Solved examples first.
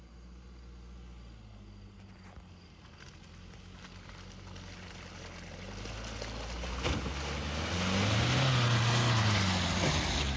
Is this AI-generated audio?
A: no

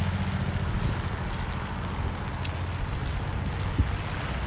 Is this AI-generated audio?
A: no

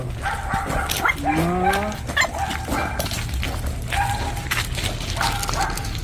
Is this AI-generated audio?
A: no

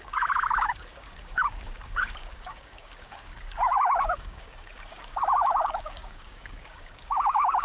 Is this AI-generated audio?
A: yes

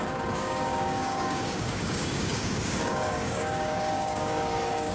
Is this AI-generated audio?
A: yes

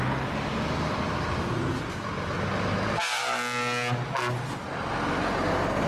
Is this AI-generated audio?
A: no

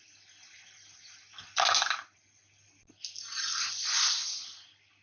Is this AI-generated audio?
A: no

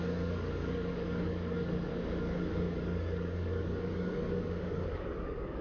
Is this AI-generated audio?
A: yes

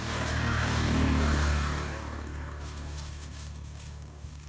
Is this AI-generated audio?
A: yes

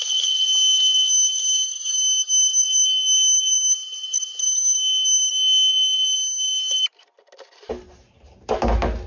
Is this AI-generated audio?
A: no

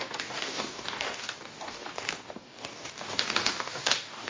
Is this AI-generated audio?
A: yes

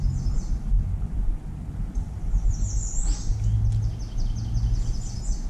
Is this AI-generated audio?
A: no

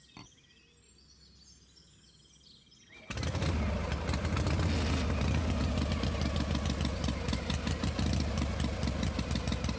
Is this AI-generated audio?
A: no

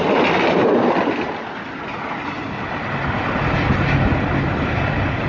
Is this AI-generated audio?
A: no